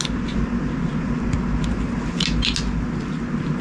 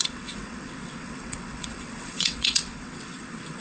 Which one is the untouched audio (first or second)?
first